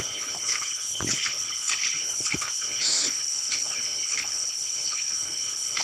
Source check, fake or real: fake